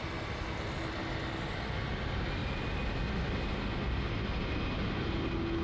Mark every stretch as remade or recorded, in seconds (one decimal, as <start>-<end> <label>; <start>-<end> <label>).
0.0-5.6 recorded

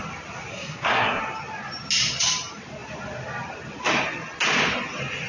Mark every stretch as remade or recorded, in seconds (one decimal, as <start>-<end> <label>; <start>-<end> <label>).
0.0-0.5 recorded; 0.5-1.2 remade; 1.2-5.3 recorded

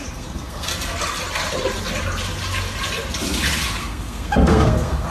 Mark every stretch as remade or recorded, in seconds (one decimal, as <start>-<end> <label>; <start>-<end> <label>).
0.0-0.7 remade; 0.7-3.8 recorded; 3.8-5.1 remade